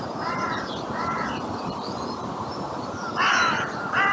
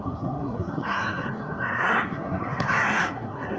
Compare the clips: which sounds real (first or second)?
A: first